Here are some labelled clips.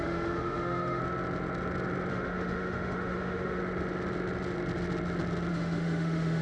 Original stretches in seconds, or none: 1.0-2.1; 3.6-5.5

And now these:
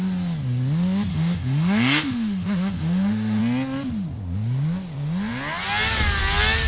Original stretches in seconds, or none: 0.0-1.1; 3.4-6.7